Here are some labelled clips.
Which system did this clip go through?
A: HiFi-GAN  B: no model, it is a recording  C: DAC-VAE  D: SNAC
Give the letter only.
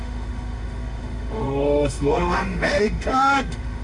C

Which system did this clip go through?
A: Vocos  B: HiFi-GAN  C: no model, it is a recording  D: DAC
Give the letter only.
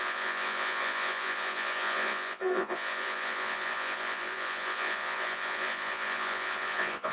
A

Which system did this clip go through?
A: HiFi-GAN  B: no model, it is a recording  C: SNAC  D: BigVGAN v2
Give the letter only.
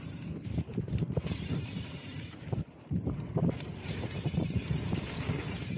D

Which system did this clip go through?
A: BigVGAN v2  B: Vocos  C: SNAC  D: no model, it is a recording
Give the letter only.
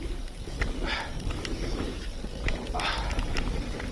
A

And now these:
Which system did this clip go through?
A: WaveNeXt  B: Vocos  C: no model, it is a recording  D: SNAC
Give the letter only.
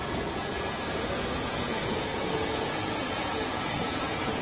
B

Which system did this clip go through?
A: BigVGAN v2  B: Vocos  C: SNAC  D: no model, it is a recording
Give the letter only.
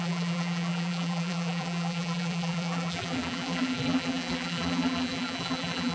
A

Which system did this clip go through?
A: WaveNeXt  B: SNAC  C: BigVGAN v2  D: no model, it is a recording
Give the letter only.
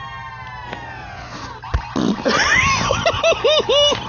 D